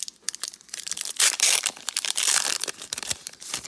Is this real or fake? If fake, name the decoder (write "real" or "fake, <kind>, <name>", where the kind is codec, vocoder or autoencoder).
fake, vocoder, BigVGAN v2